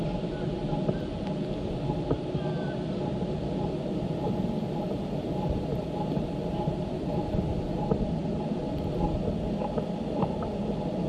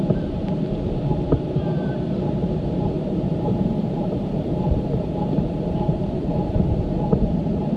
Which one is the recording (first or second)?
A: first